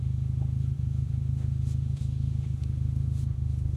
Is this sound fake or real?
fake